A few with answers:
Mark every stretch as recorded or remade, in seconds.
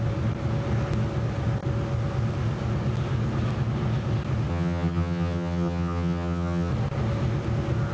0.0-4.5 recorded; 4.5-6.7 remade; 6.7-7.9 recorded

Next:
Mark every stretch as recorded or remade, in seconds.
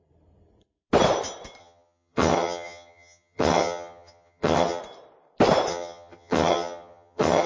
0.0-1.6 recorded; 1.6-4.8 remade; 4.8-5.7 recorded; 5.7-7.5 remade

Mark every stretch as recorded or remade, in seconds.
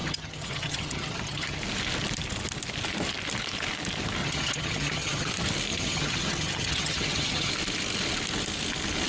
0.0-1.6 remade; 1.6-4.2 recorded; 4.2-5.3 remade; 5.3-5.7 recorded; 5.7-7.5 remade; 7.5-9.1 recorded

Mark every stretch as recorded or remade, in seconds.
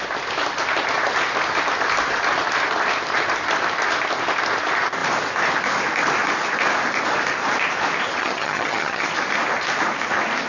0.0-8.2 recorded; 8.2-9.1 remade; 9.1-10.5 recorded